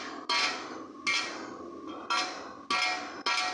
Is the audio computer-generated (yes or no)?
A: no